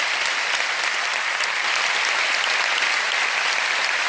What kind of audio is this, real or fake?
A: real